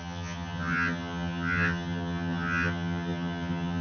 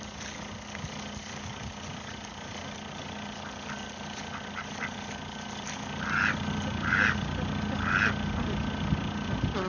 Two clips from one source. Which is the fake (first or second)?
first